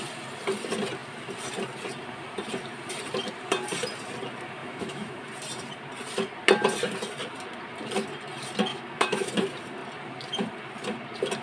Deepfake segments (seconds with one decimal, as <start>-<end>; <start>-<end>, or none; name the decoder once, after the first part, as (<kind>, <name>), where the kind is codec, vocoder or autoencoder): 4.6-5.2 (autoencoder, DAC-VAE); 8.7-9.3